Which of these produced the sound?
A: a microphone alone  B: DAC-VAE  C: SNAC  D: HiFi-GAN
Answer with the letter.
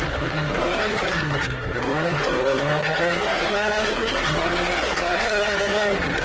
C